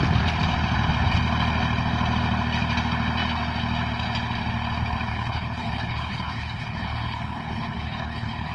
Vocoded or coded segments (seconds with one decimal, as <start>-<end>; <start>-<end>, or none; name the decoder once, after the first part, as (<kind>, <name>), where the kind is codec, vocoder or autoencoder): 5.1-8.5 (codec, HILCodec)